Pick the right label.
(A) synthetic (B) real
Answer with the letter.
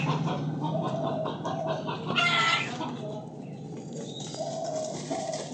B